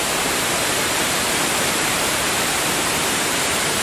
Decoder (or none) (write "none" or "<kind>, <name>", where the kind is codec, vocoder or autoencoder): vocoder, BigVGAN v2